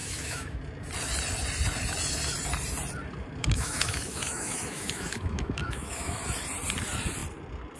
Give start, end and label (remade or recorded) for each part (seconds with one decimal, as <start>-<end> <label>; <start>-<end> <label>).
0.0-0.6 remade; 0.6-3.4 recorded; 3.4-6.2 remade; 6.2-7.8 recorded